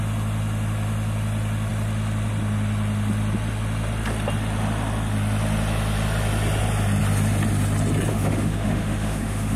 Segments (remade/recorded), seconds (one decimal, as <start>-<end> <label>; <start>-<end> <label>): 0.0-8.1 recorded; 8.1-9.6 remade

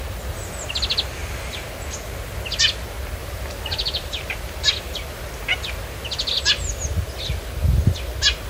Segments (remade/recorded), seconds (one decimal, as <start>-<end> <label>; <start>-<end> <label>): 0.0-3.2 recorded; 3.2-4.7 remade; 4.7-8.5 recorded

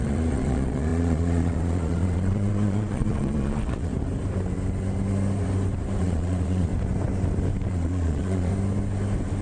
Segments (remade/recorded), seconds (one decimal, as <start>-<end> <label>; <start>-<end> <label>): 0.0-3.9 remade; 3.9-6.0 recorded; 6.0-6.7 remade; 6.7-7.7 recorded; 7.7-8.5 remade; 8.5-9.4 recorded